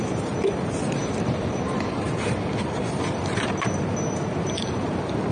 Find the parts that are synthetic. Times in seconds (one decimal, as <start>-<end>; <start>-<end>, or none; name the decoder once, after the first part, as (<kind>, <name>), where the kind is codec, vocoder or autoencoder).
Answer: none

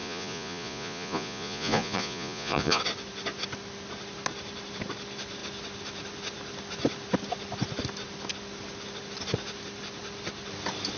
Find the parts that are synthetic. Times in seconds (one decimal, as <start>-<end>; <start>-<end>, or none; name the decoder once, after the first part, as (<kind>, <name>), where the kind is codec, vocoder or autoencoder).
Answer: 0.0-2.8 (vocoder, Vocos)

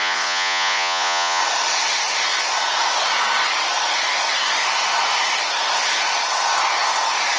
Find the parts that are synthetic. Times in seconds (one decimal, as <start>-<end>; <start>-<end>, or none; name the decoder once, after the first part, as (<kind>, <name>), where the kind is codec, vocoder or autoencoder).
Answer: 0.0-1.4 (vocoder, Vocos)

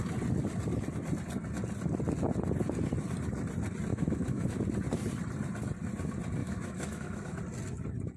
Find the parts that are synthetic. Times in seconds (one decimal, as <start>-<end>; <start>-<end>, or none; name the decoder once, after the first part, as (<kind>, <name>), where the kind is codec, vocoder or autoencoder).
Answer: 3.9-4.6 (autoencoder, DAC-VAE); 6.4-7.4

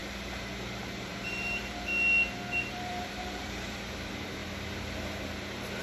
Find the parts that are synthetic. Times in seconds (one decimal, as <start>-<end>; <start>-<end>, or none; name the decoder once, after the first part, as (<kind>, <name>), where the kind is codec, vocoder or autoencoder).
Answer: 0.0-1.9 (vocoder, BigVGAN v2); 2.7-4.4

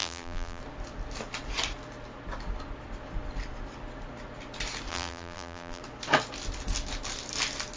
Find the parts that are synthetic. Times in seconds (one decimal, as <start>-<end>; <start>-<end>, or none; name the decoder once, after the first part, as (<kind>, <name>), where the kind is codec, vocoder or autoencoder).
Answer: 0.0-0.6 (vocoder, BigVGAN v2); 4.9-5.8

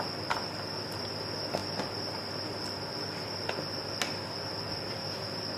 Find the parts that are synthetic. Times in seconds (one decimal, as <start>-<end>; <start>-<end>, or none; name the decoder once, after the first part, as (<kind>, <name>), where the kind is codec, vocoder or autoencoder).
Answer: none